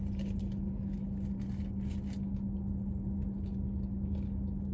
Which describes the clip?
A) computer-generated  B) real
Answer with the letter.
B